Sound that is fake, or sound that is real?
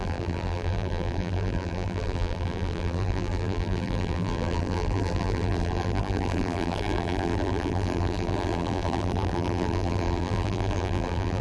fake